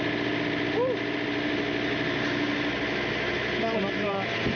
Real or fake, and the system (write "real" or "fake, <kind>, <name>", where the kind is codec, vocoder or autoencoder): real